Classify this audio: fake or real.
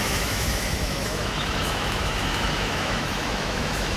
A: fake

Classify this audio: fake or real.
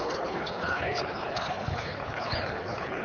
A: fake